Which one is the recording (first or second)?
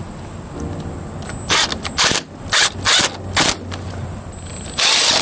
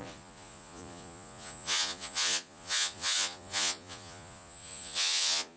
first